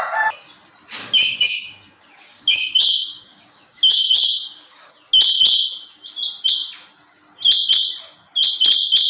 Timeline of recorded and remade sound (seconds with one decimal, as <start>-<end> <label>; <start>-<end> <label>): 0.0-1.0 recorded; 1.0-4.9 remade; 4.9-9.1 recorded